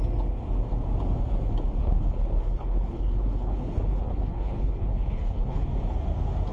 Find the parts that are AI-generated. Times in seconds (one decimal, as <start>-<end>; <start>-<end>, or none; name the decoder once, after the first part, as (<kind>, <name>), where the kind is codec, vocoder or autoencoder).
1.8-5.7 (codec, HILCodec)